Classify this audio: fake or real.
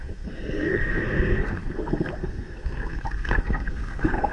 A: fake